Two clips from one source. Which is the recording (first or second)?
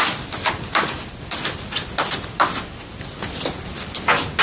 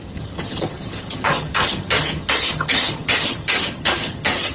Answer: first